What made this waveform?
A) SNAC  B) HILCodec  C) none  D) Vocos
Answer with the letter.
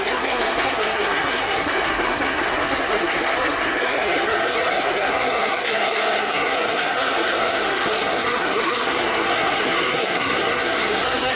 A